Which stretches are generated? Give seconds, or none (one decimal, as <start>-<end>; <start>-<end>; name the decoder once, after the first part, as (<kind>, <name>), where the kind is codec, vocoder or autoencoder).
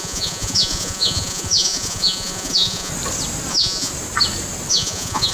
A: 0.0-2.9 (vocoder, Vocos); 3.5-3.9; 4.7-5.3